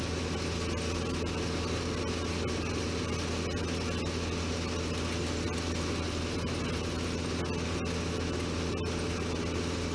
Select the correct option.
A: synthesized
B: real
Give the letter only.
B